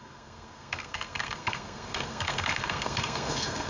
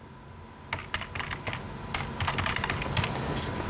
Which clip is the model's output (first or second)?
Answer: first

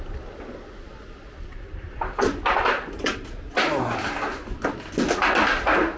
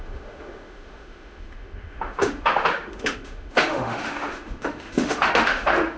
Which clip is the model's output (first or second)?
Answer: second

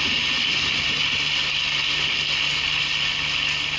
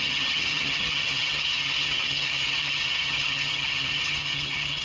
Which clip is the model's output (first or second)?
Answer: second